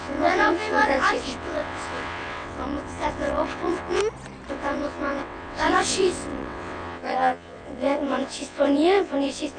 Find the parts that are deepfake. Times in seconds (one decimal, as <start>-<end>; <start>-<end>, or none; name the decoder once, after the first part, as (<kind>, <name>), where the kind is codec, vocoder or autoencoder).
0.0-4.0 (vocoder, WaveNeXt); 4.5-9.6